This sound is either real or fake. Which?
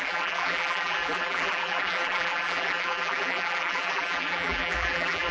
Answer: fake